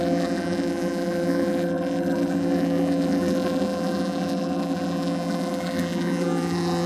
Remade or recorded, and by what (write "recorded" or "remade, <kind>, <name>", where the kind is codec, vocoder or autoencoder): remade, vocoder, BigVGAN v2